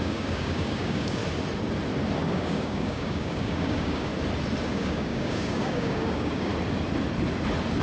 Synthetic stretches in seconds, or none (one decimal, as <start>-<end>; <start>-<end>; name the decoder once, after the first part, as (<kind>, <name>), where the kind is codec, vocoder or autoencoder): 0.0-1.2 (codec, DAC); 2.3-4.1; 4.7-6.5

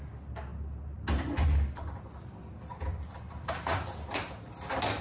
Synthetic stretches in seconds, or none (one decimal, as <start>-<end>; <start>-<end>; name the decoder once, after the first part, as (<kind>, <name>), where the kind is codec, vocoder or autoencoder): none